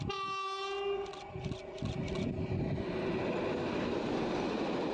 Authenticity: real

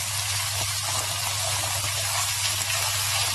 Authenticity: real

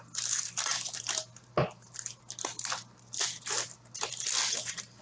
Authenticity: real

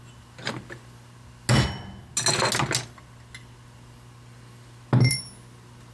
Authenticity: real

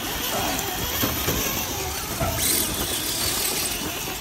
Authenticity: real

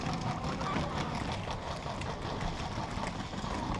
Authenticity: real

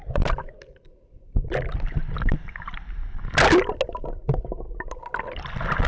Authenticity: real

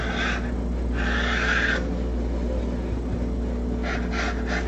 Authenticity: real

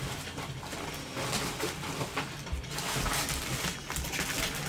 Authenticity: real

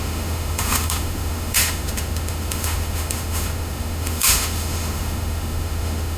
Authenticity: fake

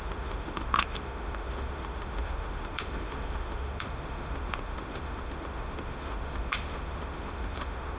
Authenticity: fake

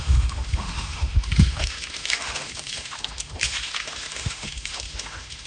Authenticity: fake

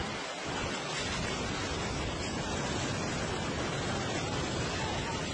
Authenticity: real